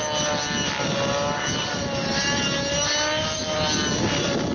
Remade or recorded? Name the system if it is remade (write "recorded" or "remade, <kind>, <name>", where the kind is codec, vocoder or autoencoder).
recorded